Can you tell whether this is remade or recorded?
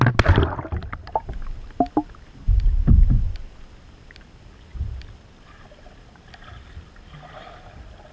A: recorded